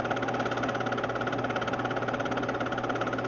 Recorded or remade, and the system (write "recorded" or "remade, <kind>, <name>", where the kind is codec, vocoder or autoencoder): recorded